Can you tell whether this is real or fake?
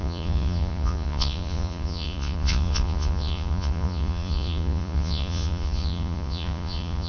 fake